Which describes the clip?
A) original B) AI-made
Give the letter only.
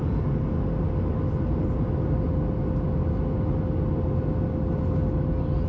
A